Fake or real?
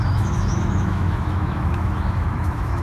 fake